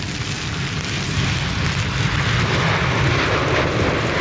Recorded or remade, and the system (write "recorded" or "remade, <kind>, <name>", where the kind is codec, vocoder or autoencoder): recorded